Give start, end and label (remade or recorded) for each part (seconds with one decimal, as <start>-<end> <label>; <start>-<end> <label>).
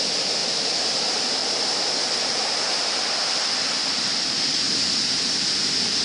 0.0-0.4 recorded; 0.4-1.0 remade; 1.0-1.4 recorded; 1.4-3.2 remade; 3.2-6.0 recorded